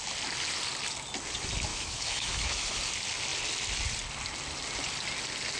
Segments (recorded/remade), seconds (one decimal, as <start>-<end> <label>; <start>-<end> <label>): 0.0-1.7 recorded; 1.7-2.8 remade; 2.8-5.6 recorded